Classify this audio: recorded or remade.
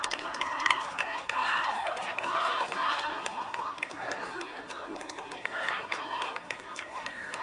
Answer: remade